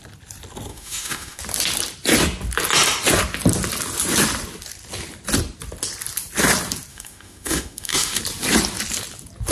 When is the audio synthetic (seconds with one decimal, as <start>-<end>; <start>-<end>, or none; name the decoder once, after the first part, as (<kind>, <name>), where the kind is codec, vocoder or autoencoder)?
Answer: 0.7-1.4 (autoencoder, DAC-VAE); 6.9-8.2